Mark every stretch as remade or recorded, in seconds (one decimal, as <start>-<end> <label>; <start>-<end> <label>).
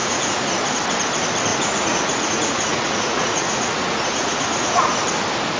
0.0-0.5 remade; 0.5-1.5 recorded; 1.5-4.9 remade; 4.9-5.6 recorded